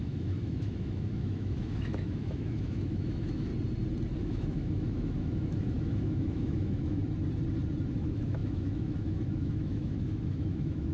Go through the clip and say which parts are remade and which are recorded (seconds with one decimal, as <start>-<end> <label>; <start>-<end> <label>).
0.0-3.5 remade; 3.5-4.2 recorded; 4.2-7.0 remade; 7.0-7.9 recorded; 7.9-10.9 remade